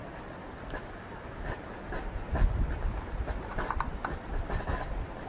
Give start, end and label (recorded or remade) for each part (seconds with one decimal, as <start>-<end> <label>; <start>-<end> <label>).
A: 0.0-0.6 recorded; 0.6-5.3 remade